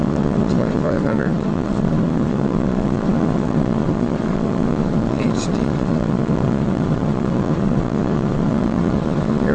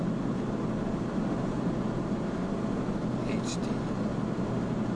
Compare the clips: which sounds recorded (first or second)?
second